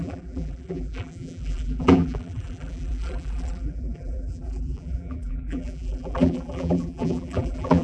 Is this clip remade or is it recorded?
remade